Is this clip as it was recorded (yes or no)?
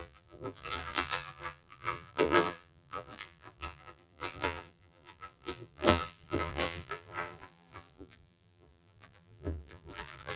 no